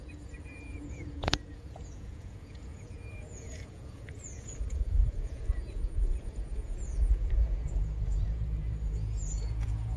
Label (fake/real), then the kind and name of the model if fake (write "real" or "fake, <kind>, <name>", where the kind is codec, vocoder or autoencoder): fake, vocoder, Vocos